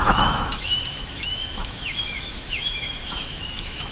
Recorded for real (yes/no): no